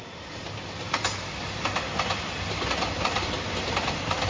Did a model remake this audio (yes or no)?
no